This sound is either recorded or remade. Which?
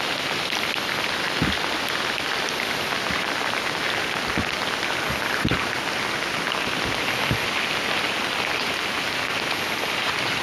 recorded